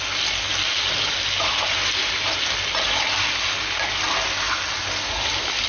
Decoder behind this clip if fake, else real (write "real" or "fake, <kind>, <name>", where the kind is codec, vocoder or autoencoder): real